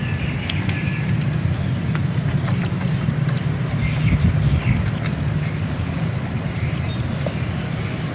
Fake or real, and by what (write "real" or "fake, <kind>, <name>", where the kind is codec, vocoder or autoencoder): real